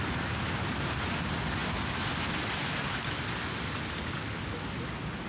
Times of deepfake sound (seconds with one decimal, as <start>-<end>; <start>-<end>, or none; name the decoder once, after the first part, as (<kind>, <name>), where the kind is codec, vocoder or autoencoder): none